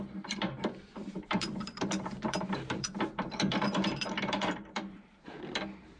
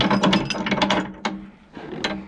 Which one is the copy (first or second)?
first